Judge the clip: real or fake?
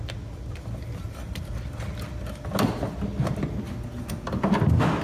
real